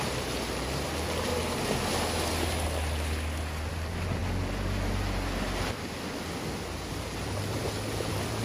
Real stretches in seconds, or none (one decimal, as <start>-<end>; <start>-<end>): 1.3-3.7; 4.2-6.9